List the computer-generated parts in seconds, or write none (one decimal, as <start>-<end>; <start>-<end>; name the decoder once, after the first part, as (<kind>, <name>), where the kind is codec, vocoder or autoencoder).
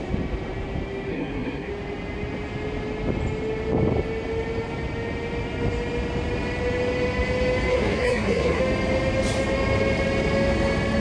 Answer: 1.1-1.7 (codec, SNAC); 7.7-8.6